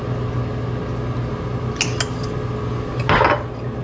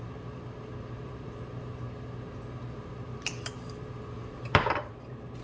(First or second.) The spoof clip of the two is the second